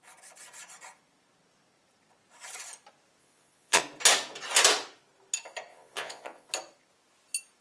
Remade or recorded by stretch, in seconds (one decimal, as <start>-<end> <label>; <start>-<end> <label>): 0.0-3.2 recorded; 3.2-3.8 remade; 3.8-5.7 recorded; 5.7-6.5 remade; 6.5-7.6 recorded